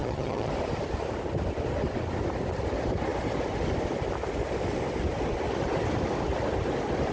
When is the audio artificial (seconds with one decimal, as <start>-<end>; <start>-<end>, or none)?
0.0-0.5